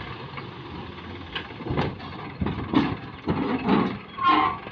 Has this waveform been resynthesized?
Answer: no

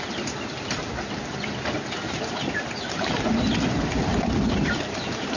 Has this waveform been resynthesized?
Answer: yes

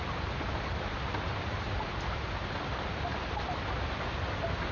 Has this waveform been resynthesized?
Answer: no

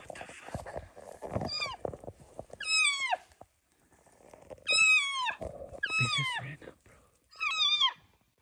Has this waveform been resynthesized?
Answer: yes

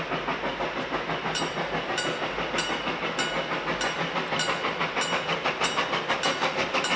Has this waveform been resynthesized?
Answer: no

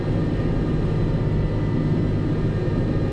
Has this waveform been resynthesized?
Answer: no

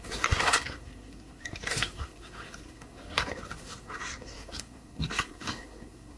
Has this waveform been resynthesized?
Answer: yes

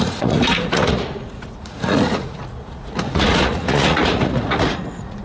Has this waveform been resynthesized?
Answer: yes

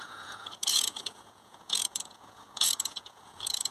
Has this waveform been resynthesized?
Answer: yes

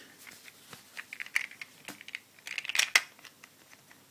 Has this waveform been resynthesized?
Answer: no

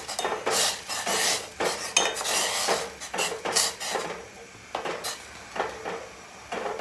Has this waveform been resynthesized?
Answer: no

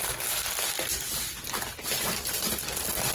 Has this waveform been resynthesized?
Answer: no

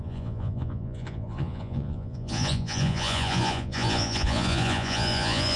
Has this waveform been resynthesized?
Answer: yes